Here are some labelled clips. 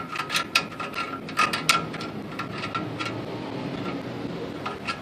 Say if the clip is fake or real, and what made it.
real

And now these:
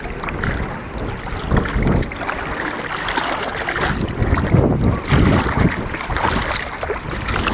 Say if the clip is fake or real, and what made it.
real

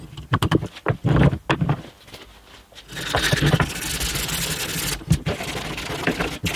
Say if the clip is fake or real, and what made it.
real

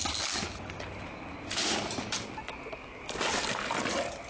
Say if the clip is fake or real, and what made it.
real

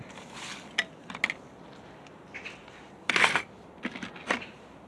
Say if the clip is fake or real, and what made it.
real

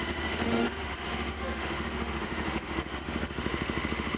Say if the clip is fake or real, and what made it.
fake, autoencoder, DAC-VAE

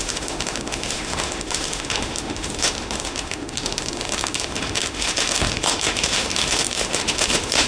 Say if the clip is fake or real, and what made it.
fake, autoencoder, DAC-VAE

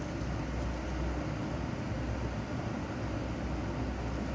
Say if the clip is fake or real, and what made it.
real